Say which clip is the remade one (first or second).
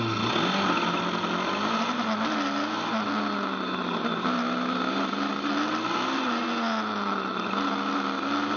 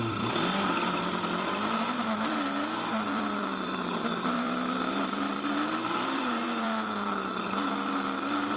second